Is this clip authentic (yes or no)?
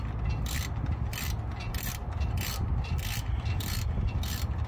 yes